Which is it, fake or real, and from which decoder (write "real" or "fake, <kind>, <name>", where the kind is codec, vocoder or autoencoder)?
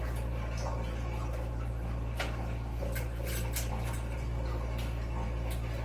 real